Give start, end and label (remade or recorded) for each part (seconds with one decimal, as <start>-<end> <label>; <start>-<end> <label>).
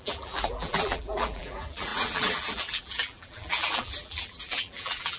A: 0.0-5.2 remade